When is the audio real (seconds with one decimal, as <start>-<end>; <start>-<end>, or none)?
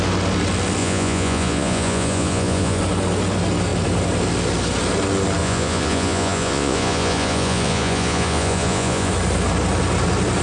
0.0-0.8; 2.8-5.4; 9.1-10.4